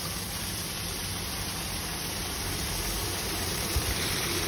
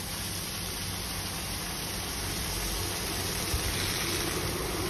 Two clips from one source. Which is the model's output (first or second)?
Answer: first